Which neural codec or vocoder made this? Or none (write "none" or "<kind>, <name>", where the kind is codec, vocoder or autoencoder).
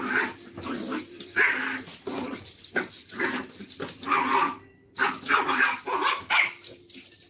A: none